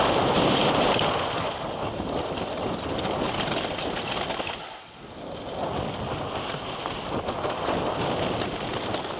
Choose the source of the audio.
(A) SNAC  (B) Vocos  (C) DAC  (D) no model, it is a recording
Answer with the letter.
D